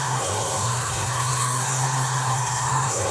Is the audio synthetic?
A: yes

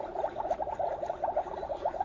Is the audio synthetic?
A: no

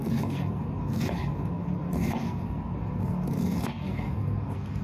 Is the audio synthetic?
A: yes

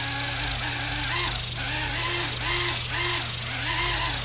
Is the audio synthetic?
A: no